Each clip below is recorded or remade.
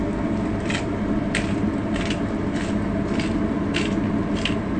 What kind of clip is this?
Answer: recorded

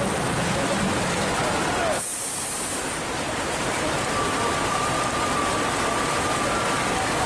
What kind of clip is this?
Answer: recorded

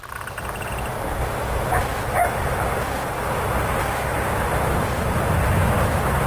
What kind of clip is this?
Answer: recorded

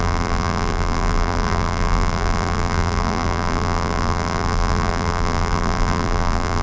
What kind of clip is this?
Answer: remade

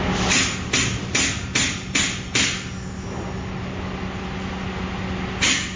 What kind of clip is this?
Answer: recorded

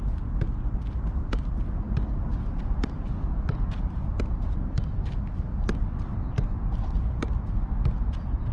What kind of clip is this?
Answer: recorded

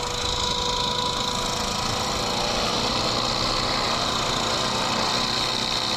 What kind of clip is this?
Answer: recorded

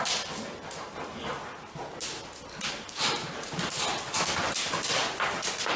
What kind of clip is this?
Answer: recorded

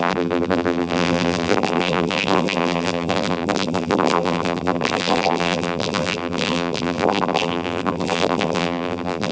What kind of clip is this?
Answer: remade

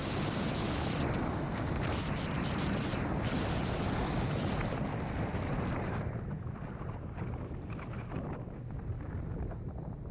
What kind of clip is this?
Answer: recorded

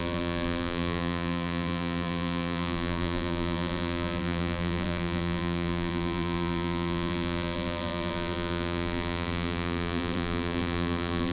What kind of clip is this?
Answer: remade